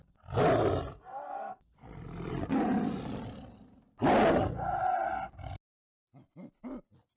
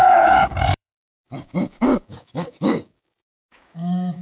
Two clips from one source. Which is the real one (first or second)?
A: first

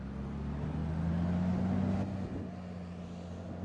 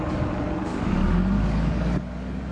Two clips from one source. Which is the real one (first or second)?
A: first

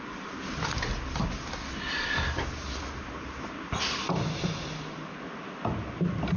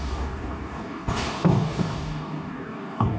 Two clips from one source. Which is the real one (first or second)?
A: first